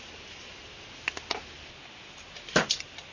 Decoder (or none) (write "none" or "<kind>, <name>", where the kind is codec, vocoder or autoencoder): none